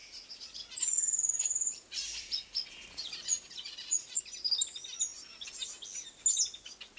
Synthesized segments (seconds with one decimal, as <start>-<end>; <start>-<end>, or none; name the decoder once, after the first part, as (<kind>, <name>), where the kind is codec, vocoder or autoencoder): 0.0-4.2 (vocoder, Vocos)

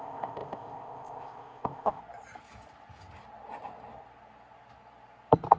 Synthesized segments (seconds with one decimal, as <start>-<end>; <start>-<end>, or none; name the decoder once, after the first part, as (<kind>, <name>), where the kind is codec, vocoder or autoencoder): 0.0-2.0 (codec, ZipCodec)

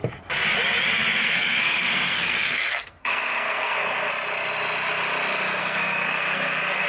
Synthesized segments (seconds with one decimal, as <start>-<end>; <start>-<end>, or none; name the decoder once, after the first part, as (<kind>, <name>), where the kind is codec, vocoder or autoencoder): 1.2-4.1 (codec, SNAC); 5.6-6.9

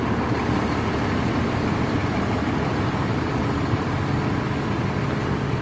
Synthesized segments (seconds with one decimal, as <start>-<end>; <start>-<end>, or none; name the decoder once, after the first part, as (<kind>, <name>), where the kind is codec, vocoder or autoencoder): none

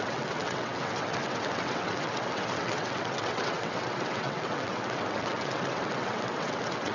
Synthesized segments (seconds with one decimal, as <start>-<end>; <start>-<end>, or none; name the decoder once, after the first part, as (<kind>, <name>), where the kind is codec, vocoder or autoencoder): 0.0-6.9 (vocoder, WaveNeXt)